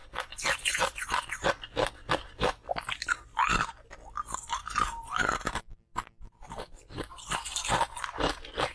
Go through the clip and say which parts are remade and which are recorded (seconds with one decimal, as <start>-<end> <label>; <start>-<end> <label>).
0.0-6.4 recorded; 6.4-7.1 remade; 7.1-8.7 recorded